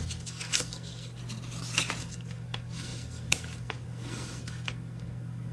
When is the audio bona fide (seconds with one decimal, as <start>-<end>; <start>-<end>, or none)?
1.2-2.0